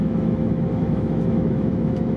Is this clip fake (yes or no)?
yes